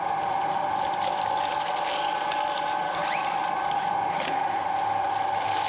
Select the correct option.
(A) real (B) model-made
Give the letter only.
B